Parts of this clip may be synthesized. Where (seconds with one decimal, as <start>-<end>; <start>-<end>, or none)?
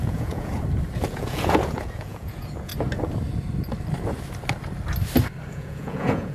0.0-0.5; 1.0-2.7; 5.5-6.3